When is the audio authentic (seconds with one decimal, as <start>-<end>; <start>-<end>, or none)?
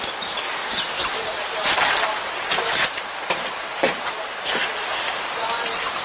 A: 0.0-2.8; 4.5-6.0